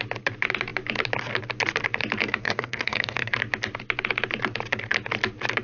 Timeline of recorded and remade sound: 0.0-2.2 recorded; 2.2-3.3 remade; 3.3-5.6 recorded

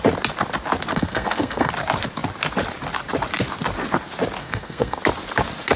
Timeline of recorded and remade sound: 0.0-0.9 recorded; 0.9-1.7 remade; 1.7-4.4 recorded; 4.4-5.0 remade; 5.0-5.8 recorded

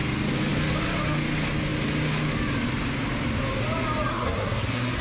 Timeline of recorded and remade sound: 0.0-4.1 recorded; 4.1-5.0 remade

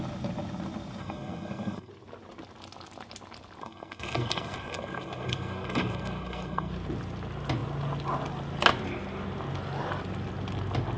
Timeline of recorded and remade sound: 0.0-1.0 recorded; 1.0-1.9 remade; 1.9-3.6 recorded; 3.6-6.7 remade; 6.7-11.0 recorded

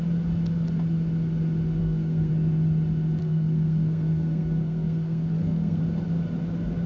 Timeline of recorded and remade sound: 0.0-1.8 recorded; 1.8-2.3 remade; 2.3-3.2 recorded; 3.2-5.8 remade; 5.8-6.9 recorded

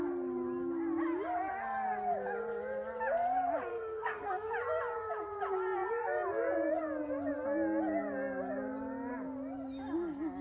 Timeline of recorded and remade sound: 0.0-3.7 recorded; 3.7-4.5 remade; 4.5-10.4 recorded

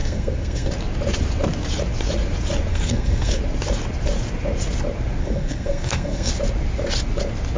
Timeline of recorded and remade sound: 0.0-0.7 remade; 0.7-2.7 recorded; 2.7-3.4 remade; 3.4-5.2 recorded; 5.2-6.3 remade; 6.3-7.6 recorded